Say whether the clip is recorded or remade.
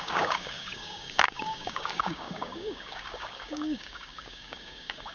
remade